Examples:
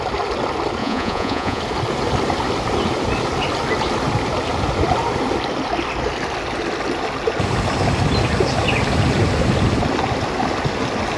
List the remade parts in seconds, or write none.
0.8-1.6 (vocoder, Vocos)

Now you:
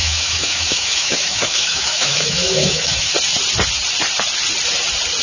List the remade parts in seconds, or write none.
0.0-3.1 (autoencoder, DAC-VAE)

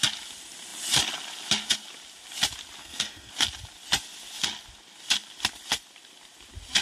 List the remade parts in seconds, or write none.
2.8-3.3 (codec, SNAC)

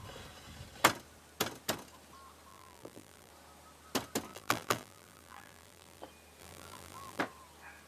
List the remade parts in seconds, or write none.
2.5-3.3 (vocoder, BigVGAN v2); 4.3-6.0; 6.4-7.2

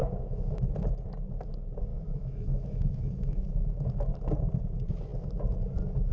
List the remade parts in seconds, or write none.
0.0-0.6 (autoencoder, DAC-VAE); 1.9-3.9

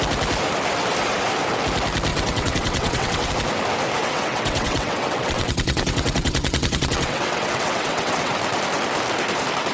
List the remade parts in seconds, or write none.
2.1-3.3 (vocoder, WaveNeXt); 4.0-8.3